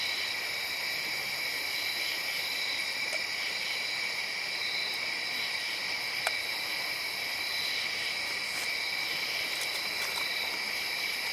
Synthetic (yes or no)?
no